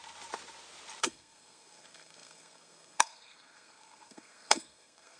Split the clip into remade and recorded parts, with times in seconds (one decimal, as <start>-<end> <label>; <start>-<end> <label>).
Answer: 0.0-1.0 recorded; 1.0-5.2 remade